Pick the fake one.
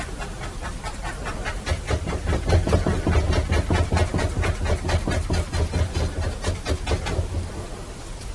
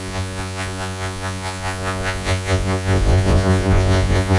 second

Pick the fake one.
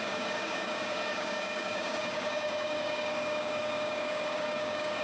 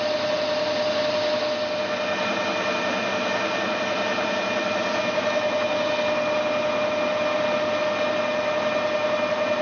first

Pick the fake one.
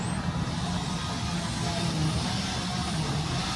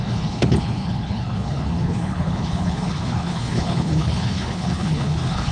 second